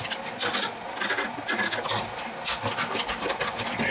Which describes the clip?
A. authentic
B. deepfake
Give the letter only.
A